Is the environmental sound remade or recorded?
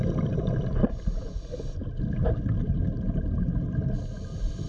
recorded